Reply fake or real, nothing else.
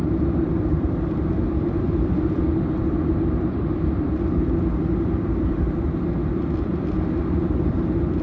fake